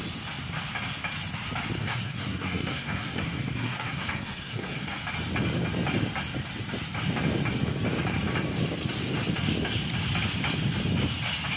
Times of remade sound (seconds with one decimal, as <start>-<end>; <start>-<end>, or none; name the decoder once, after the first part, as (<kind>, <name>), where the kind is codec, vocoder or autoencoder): 1.8-5.0 (codec, SNAC)